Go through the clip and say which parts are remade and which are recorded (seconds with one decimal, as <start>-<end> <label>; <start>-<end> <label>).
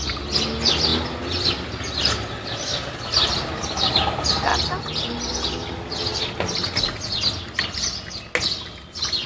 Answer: 0.0-9.3 recorded